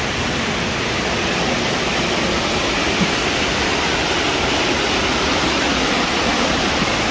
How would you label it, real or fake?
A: real